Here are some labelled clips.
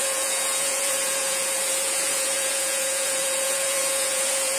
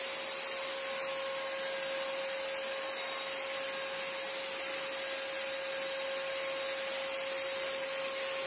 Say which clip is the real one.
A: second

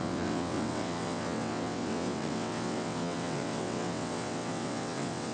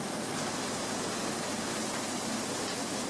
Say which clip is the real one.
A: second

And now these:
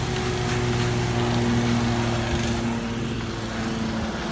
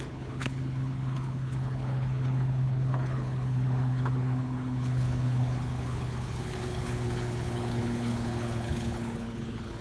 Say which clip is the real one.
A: first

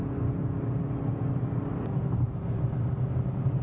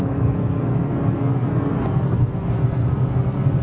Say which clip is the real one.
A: first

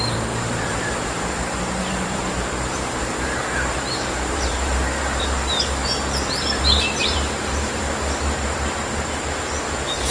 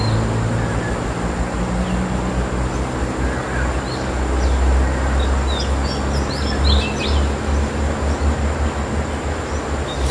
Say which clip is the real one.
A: second